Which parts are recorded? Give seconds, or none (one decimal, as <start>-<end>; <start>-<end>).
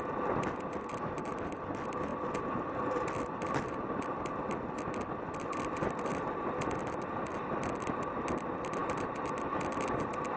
0.0-10.4